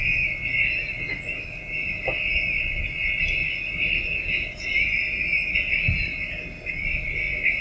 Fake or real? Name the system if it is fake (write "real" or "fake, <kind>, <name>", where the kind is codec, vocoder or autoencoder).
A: real